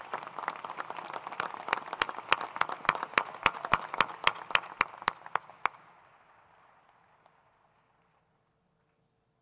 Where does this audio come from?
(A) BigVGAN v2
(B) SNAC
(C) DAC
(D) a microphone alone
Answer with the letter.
D